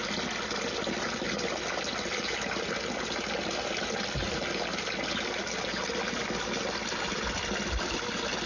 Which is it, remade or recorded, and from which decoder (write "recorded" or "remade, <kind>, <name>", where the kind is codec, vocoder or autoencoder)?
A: recorded